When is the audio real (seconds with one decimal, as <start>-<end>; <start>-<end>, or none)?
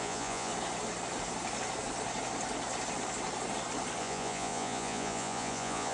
0.5-4.0